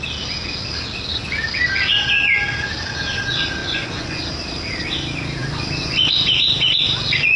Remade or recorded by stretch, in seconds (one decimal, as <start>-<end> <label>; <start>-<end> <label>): 0.0-3.6 recorded; 3.6-4.2 remade; 4.2-5.4 recorded; 5.4-6.1 remade; 6.1-7.4 recorded